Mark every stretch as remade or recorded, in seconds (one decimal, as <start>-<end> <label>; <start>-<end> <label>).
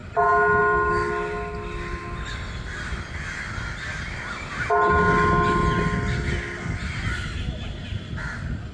0.0-8.7 recorded